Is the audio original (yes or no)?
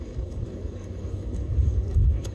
no